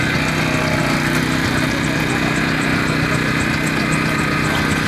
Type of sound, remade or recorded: recorded